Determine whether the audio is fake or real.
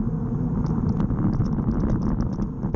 fake